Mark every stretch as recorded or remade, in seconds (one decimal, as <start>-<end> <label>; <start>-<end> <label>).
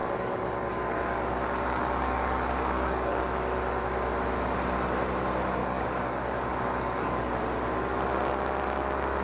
0.0-3.2 remade; 3.2-5.6 recorded; 5.6-7.3 remade; 7.3-9.2 recorded